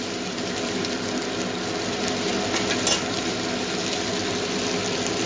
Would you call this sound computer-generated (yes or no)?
no